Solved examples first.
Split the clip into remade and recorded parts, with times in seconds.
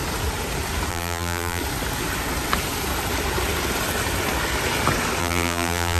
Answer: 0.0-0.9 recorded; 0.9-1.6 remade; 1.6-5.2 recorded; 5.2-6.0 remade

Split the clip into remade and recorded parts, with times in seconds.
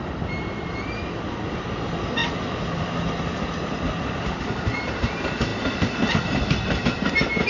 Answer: 0.0-7.5 recorded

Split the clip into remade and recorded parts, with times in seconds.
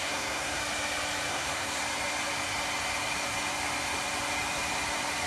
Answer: 0.0-0.6 remade; 0.6-1.3 recorded; 1.3-1.8 remade; 1.8-5.3 recorded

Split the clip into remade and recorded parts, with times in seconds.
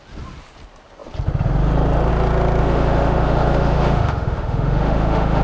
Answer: 0.0-2.6 recorded; 2.6-5.4 remade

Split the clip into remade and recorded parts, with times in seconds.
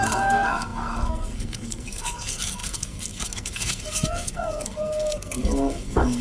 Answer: 0.0-6.2 remade